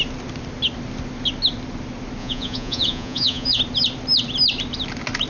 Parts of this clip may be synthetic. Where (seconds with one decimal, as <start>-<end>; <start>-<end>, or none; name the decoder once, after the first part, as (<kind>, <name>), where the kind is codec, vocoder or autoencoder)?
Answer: 2.2-3.6 (vocoder, Vocos)